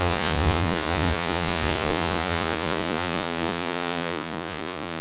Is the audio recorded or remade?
remade